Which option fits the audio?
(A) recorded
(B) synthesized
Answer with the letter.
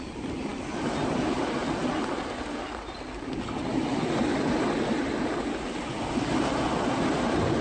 A